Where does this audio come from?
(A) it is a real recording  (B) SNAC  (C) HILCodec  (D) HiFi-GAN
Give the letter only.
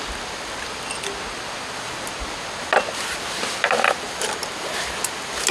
A